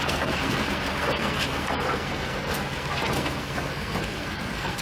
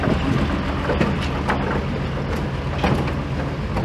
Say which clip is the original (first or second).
second